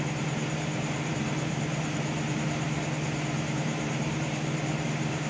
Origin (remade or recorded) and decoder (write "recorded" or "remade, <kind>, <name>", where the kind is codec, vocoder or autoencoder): remade, vocoder, BigVGAN v2